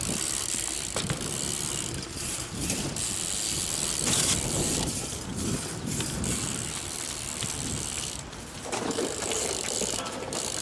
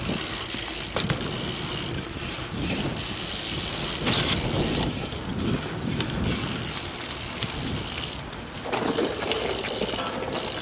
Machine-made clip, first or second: first